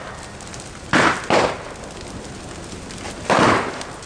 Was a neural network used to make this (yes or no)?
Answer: no